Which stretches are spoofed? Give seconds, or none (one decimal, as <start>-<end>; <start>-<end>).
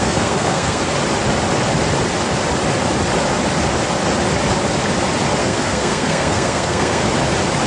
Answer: 0.0-0.8; 5.4-7.0